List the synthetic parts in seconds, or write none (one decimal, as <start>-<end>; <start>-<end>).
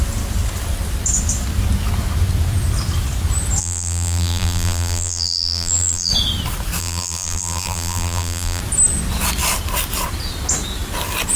3.6-6.1; 6.8-8.6